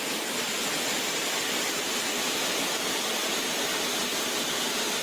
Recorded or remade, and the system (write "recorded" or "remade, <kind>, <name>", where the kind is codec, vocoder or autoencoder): recorded